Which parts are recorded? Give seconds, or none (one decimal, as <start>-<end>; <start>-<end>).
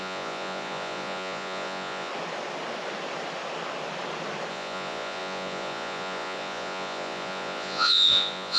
2.1-4.5